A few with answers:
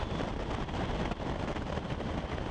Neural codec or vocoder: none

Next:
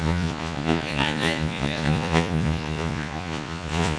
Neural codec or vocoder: vocoder, Vocos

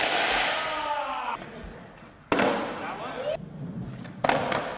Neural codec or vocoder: none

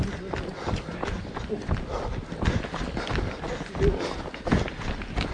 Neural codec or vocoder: none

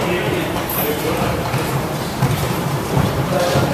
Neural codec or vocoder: vocoder, BigVGAN v2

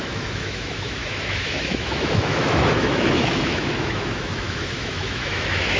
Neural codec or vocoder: autoencoder, DAC-VAE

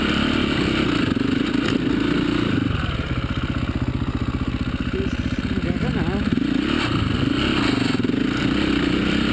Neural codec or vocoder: none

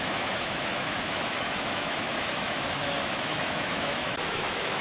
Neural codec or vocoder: autoencoder, DAC-VAE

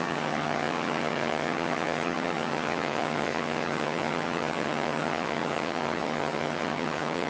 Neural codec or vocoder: vocoder, HiFi-GAN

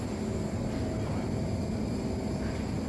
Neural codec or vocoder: none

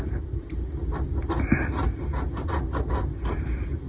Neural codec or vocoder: none